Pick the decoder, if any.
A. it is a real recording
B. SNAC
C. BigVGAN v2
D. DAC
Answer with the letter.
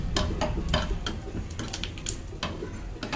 A